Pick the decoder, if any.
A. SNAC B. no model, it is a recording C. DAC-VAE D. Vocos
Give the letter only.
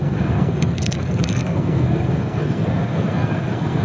A